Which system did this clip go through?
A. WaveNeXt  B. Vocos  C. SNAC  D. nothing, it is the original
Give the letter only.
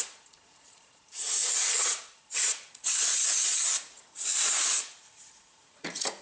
B